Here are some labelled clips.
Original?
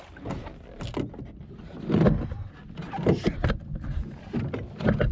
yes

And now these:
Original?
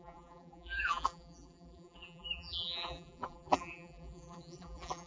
no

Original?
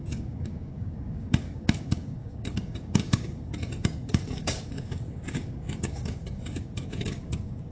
no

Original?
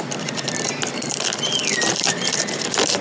yes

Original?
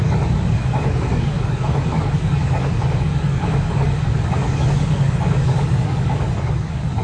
no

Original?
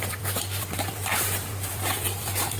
no